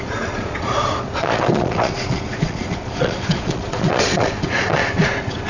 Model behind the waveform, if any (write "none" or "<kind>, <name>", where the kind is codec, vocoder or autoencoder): vocoder, Vocos